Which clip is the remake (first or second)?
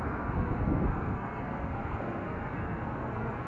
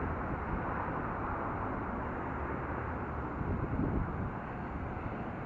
first